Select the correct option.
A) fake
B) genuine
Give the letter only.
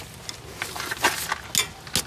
B